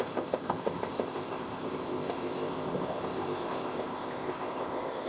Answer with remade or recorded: remade